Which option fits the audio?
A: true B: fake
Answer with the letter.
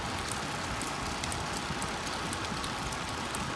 A